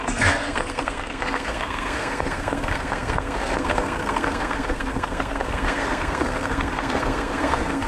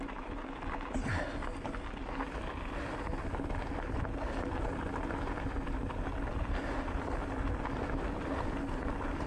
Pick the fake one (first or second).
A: first